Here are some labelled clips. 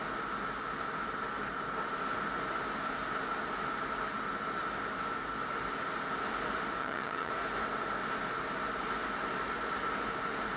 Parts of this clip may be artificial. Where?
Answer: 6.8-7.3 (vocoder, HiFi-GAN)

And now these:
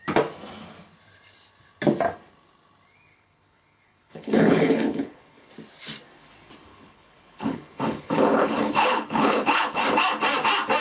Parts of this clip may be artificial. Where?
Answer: 3.1-5.5 (codec, HILCodec); 6.7-9.8

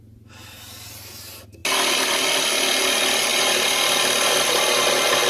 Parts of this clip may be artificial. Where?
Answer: none

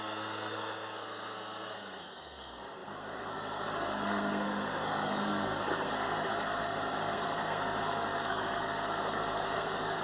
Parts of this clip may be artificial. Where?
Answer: 0.0-10.0 (codec, SNAC)

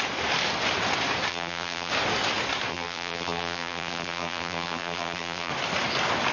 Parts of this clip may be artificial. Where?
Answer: 1.3-1.9 (vocoder, BigVGAN v2); 2.7-5.5

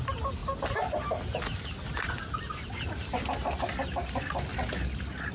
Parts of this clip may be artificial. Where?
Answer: none

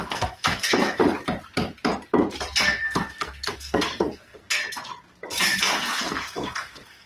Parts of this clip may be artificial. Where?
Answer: 0.0-1.0 (codec, SNAC); 2.6-4.6; 5.6-7.1